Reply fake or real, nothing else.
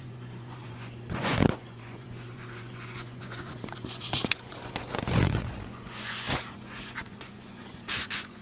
fake